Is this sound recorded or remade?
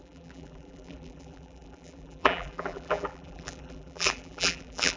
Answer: remade